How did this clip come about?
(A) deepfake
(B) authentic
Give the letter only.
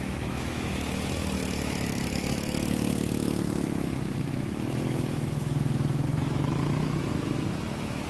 A